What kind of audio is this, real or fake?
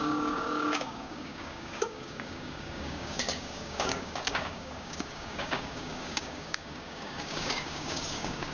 fake